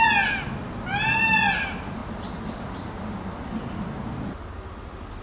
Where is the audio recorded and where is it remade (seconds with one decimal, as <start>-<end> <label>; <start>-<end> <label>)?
0.0-5.2 recorded